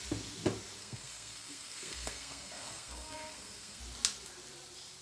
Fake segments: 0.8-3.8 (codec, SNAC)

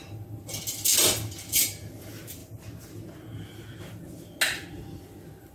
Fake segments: none